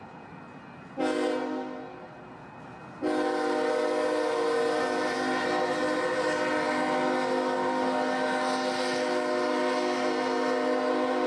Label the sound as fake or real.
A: real